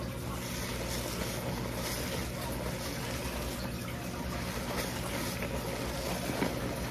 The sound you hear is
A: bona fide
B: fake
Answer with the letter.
A